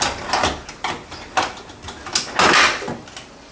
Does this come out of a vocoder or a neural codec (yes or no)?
no